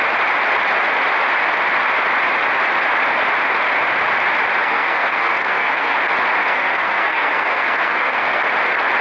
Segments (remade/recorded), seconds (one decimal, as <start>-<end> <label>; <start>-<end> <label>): 0.0-4.6 recorded; 4.6-6.0 remade; 6.0-6.4 recorded; 6.4-8.4 remade; 8.4-9.0 recorded